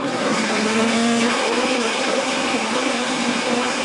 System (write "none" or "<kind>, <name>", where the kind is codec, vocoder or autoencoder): codec, SNAC